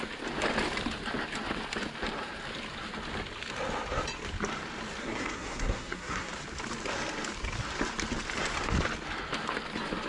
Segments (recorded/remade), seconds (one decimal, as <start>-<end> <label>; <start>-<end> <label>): 0.0-5.0 recorded; 5.0-6.3 remade; 6.3-10.1 recorded